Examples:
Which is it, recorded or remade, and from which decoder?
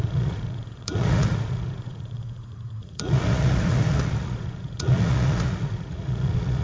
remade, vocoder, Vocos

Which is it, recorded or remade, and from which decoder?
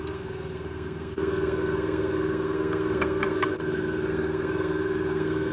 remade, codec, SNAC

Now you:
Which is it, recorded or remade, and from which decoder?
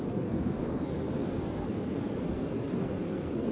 remade, codec, SNAC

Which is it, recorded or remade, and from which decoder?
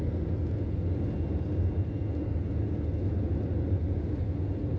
recorded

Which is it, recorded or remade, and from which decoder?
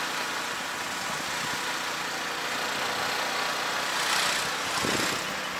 recorded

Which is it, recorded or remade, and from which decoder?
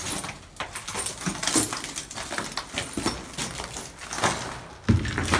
recorded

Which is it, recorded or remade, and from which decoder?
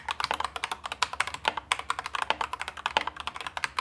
recorded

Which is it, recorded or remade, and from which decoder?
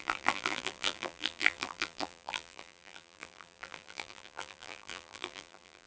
remade, vocoder, BigVGAN v2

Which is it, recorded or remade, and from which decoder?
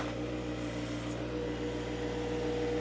recorded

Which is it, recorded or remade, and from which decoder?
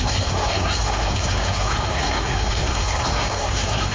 remade, codec, SNAC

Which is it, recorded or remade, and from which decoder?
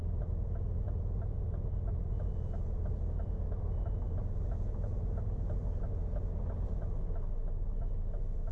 recorded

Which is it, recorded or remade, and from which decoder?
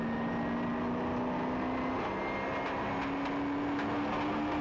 recorded